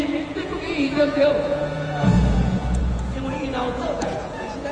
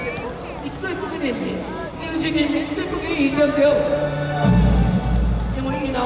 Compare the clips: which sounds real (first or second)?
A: second